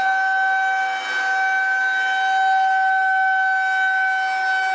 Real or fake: real